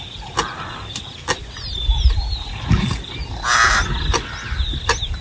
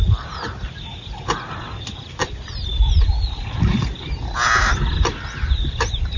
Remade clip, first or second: second